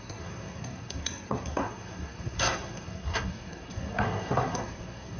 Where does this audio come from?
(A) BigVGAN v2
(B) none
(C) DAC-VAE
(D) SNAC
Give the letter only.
D